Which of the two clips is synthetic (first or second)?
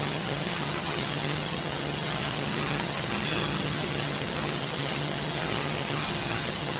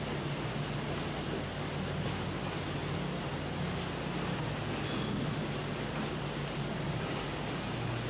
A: first